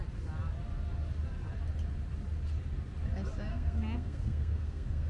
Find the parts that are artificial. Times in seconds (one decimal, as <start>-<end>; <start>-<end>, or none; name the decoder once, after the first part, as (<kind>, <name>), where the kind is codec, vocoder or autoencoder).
3.5-5.1 (codec, SNAC)